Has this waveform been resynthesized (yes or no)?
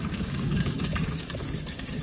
yes